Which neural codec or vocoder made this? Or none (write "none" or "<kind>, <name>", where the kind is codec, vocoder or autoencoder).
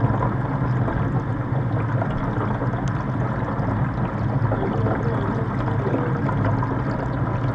none